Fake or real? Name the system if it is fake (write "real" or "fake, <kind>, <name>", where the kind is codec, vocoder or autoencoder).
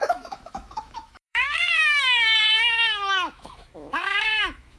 fake, autoencoder, DAC-VAE